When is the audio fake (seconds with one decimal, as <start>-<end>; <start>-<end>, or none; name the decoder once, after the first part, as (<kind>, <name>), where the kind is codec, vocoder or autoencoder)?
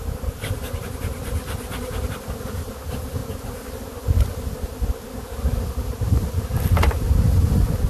none